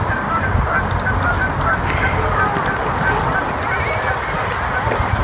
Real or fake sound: real